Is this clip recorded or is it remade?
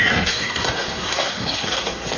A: remade